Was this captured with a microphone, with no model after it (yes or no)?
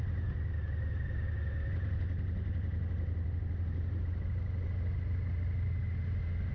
yes